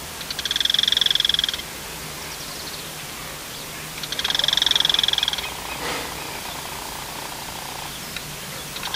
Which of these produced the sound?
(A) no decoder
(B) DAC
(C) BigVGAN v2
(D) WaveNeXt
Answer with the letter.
A